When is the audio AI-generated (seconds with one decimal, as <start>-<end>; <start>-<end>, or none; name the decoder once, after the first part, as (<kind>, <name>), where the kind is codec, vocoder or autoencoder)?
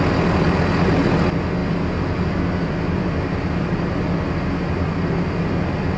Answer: none